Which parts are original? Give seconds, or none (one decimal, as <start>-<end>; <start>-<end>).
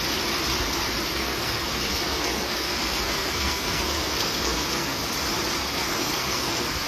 0.0-1.1; 5.0-5.6